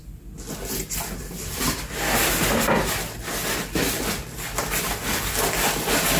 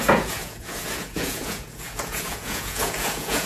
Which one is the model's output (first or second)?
second